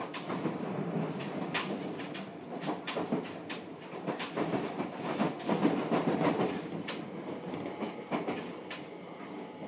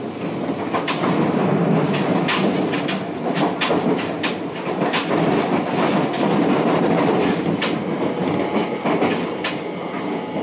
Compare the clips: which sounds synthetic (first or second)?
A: first